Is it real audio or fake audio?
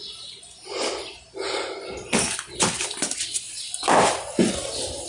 real